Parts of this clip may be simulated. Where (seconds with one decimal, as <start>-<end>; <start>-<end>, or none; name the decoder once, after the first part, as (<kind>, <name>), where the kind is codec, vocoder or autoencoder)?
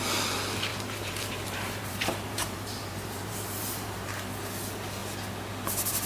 0.7-4.4 (vocoder, BigVGAN v2)